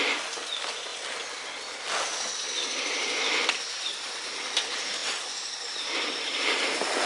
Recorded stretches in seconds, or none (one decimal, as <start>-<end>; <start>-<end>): 5.0-6.1